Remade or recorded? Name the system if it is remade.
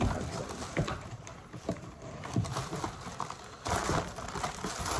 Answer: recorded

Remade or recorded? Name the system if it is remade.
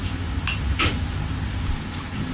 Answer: recorded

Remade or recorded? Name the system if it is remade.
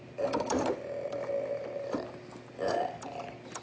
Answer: recorded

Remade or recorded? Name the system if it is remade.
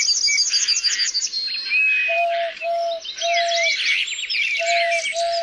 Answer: recorded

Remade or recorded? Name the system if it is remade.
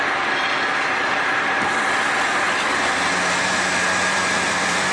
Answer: remade, vocoder, BigVGAN v2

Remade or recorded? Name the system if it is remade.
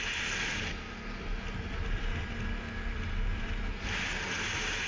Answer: recorded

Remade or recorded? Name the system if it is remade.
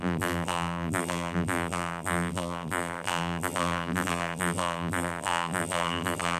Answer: remade, vocoder, BigVGAN v2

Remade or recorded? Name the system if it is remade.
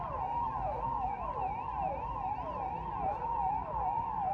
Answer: remade, vocoder, BigVGAN v2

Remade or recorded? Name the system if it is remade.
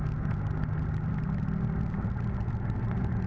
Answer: recorded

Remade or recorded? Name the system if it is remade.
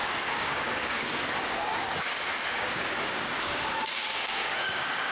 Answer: remade, codec, DAC